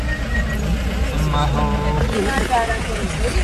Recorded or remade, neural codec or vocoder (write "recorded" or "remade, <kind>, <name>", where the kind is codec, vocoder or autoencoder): recorded